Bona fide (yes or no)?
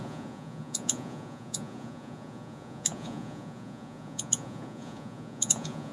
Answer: no